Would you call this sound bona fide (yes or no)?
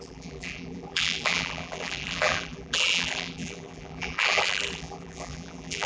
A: no